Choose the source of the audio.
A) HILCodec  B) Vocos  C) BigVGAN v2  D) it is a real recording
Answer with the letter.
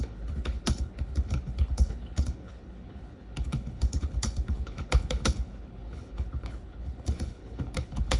A